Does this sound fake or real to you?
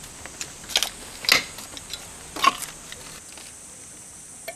real